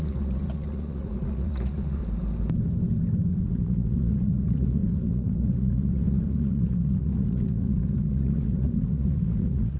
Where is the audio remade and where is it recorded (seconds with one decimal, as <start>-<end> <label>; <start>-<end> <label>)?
0.0-2.0 remade; 2.0-3.4 recorded; 3.4-9.8 remade